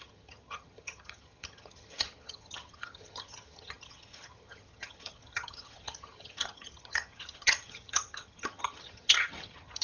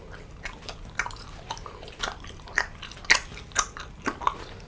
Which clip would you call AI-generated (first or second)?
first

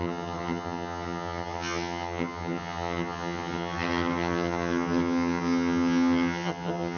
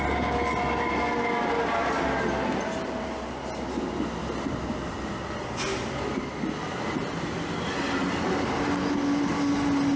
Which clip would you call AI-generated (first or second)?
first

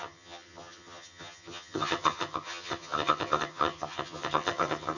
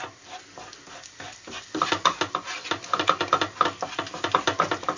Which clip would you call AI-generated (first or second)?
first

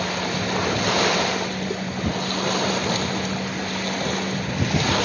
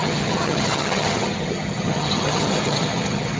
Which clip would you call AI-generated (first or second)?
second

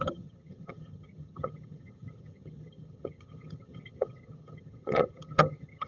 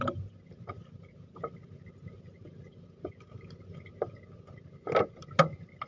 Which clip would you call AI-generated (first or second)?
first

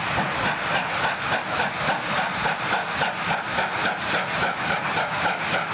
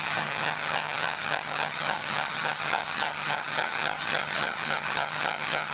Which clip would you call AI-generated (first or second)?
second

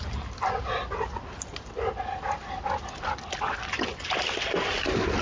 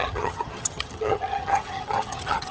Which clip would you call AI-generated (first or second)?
second